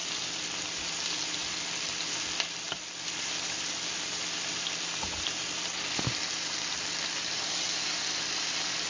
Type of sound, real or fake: real